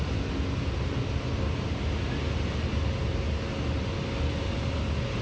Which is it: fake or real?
real